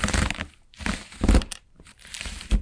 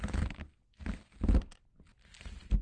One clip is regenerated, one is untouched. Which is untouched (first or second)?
second